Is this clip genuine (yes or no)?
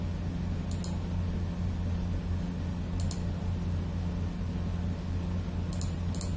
yes